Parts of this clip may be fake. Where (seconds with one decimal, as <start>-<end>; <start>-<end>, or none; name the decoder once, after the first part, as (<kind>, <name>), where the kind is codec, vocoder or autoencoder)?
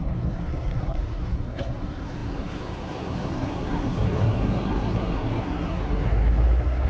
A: 0.0-6.9 (codec, SNAC)